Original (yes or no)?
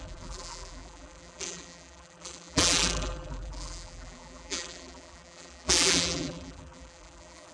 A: no